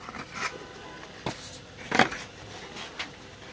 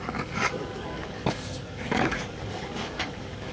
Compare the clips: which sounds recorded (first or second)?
first